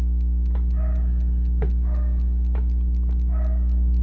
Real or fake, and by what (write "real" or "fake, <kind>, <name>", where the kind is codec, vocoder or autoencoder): real